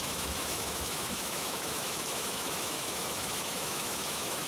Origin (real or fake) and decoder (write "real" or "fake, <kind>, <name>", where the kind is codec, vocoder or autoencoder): fake, autoencoder, DAC-VAE